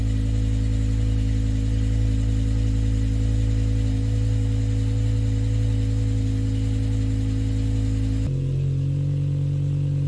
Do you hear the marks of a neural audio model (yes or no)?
no